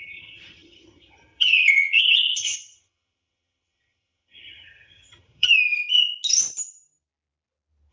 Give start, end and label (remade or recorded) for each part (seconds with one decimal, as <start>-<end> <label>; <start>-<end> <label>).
0.0-5.5 remade; 5.5-7.9 recorded